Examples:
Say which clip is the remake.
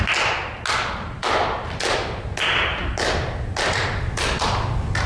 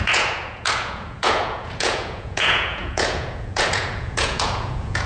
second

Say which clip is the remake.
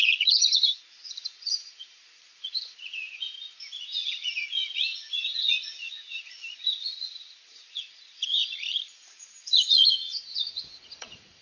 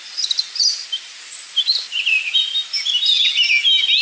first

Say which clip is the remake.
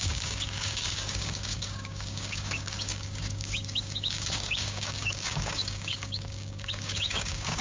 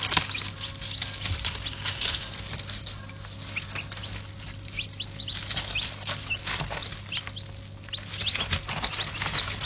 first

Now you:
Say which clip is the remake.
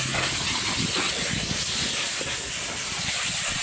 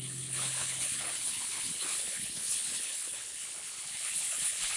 second